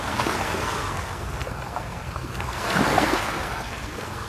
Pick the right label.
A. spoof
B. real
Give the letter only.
A